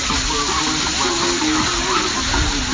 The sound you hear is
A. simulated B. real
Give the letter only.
B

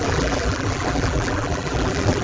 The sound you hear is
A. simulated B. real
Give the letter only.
A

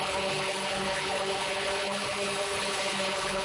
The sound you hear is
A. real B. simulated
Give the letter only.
B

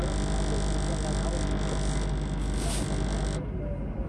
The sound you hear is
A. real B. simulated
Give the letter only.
A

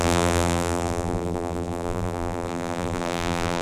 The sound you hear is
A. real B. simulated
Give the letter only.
B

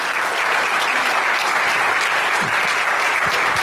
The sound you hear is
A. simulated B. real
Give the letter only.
B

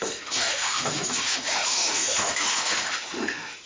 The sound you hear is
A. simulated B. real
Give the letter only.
A